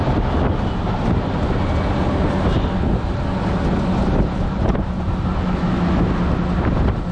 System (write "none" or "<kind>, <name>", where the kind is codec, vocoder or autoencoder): none